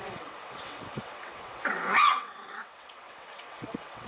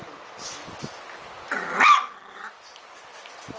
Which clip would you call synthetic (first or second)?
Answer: first